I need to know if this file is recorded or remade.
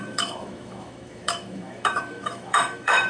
remade